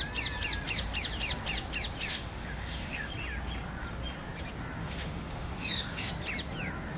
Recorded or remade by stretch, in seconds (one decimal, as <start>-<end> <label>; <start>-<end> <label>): 0.0-2.1 recorded; 2.1-3.1 remade; 3.1-4.8 recorded; 4.8-6.1 remade; 6.1-7.0 recorded